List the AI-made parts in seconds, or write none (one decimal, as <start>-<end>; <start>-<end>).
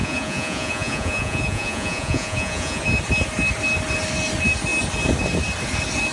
0.0-2.8